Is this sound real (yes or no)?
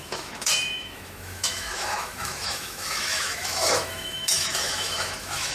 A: no